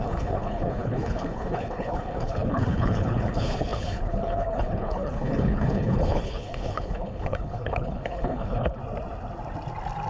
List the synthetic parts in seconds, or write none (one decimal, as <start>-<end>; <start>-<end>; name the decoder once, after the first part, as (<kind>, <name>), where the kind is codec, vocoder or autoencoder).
0.0-8.8 (codec, HILCodec)